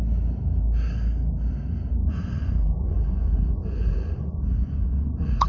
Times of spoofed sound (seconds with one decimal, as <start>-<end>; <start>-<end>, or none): 2.0-5.5